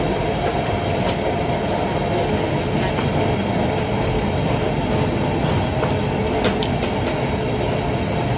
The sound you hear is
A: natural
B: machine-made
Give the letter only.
A